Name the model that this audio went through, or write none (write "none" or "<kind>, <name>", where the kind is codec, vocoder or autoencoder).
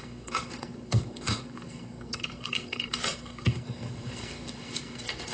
codec, SNAC